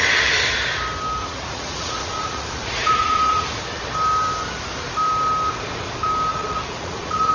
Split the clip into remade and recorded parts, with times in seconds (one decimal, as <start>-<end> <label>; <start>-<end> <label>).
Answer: 0.0-1.2 recorded; 1.2-3.6 remade; 3.6-6.3 recorded; 6.3-7.3 remade